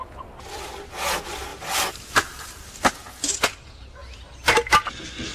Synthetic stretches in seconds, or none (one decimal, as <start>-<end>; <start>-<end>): 1.5-2.9